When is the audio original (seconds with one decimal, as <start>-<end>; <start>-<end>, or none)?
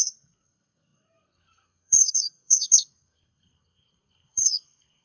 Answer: none